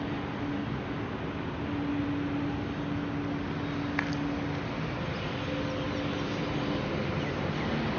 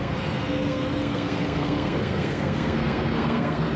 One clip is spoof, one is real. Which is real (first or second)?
first